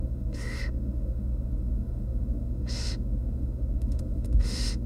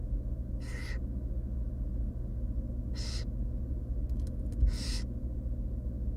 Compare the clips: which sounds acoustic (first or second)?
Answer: second